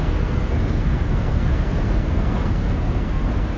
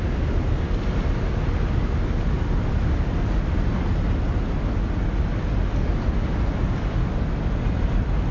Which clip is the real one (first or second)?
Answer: second